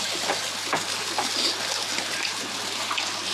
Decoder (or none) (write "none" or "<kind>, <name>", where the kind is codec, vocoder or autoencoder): none